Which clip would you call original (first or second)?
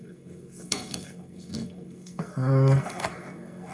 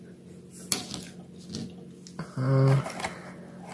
second